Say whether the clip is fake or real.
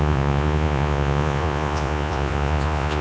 fake